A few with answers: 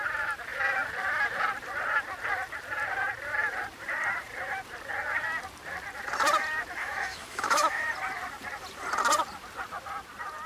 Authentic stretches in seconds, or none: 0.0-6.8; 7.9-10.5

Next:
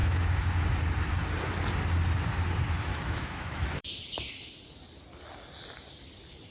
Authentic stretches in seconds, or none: 0.5-2.9; 4.0-6.5